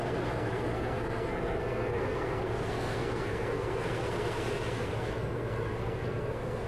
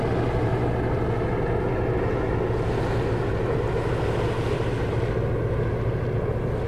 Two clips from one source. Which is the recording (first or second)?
second